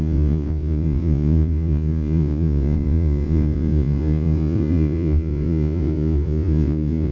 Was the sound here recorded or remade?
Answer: remade